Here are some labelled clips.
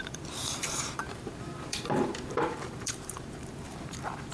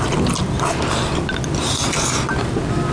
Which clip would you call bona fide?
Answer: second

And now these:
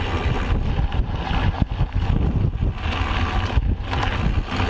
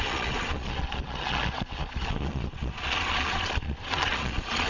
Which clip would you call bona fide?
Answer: first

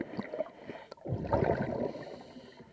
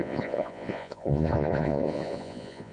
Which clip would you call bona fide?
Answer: first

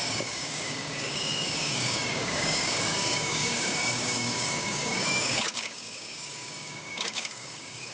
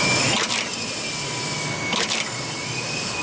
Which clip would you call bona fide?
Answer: second